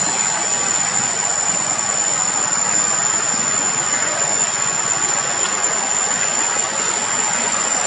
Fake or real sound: fake